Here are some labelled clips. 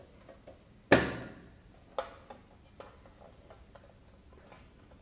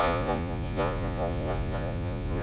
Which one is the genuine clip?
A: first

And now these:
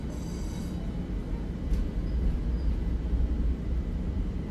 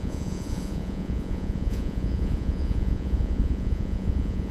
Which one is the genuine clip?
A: first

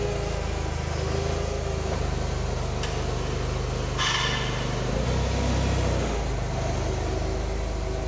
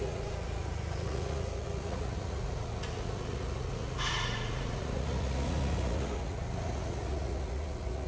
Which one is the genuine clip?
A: first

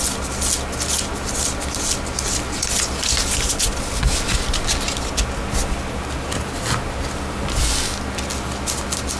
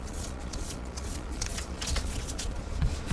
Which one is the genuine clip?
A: first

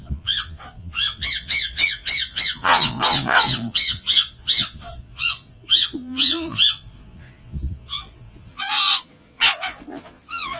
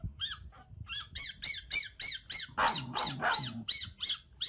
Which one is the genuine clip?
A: second